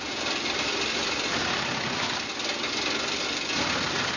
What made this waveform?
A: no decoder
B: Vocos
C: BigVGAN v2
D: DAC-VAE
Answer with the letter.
A